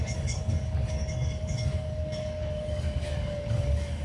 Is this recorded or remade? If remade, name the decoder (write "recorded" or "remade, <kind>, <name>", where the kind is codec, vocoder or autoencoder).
remade, codec, DAC